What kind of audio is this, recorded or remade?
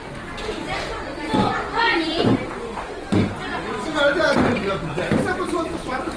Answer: remade